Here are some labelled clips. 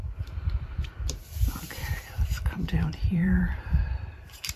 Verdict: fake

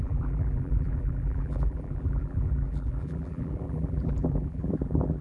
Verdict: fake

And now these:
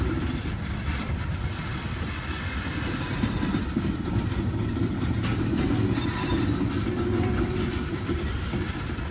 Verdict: fake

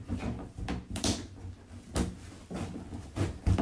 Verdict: real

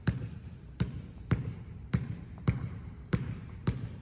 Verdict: fake